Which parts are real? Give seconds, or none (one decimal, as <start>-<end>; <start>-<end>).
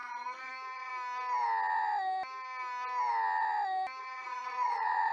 0.9-4.0